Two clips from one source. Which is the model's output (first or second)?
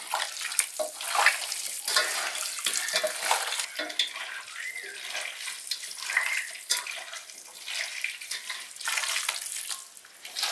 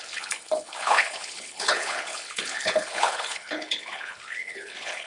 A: second